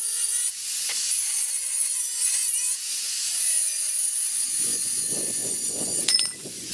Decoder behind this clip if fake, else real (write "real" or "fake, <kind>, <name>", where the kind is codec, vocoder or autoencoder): fake, vocoder, Vocos